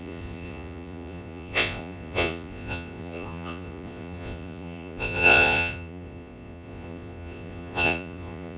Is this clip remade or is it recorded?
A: remade